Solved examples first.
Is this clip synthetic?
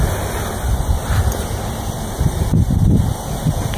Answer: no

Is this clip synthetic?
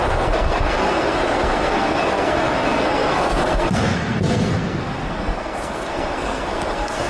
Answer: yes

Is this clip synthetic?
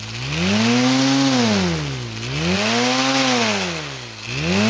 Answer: no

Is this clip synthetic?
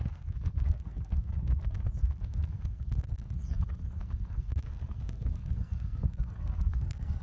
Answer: yes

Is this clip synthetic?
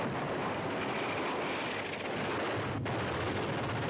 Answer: no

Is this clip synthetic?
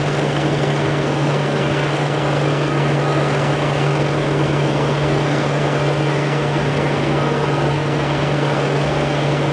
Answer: yes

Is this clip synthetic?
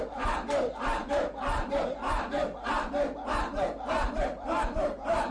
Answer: no